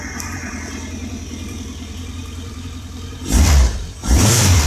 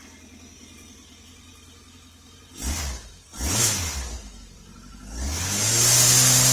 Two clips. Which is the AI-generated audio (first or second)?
first